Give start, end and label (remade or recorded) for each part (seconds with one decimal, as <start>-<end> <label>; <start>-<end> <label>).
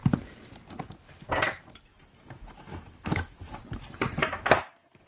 0.0-1.9 recorded; 1.9-3.6 remade; 3.6-4.2 recorded; 4.2-5.1 remade